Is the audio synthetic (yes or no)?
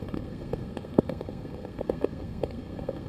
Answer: yes